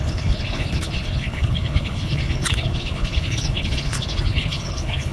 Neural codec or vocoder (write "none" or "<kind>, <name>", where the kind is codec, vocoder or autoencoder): codec, HILCodec